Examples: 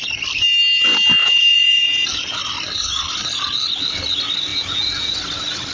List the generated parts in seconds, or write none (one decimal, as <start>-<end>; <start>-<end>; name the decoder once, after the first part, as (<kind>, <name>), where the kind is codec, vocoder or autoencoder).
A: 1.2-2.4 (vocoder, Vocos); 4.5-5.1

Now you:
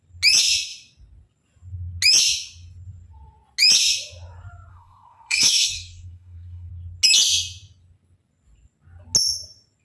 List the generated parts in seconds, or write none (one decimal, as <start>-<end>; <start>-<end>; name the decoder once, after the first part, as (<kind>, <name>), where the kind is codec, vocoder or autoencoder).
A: 4.7-6.7 (codec, SNAC)

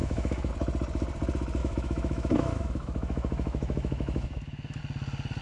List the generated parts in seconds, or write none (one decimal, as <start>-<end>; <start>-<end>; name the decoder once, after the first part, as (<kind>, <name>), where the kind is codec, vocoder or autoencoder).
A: 0.0-0.5 (autoencoder, DAC-VAE); 1.6-4.8

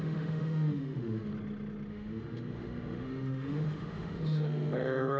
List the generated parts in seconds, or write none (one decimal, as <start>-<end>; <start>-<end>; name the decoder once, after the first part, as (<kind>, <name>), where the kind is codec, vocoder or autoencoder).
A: 0.0-1.3 (autoencoder, DAC-VAE); 1.9-5.2